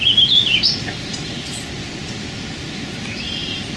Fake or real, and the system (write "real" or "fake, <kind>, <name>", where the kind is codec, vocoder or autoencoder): real